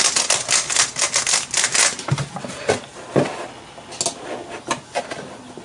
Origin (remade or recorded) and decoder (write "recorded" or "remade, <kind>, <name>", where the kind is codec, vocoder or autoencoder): recorded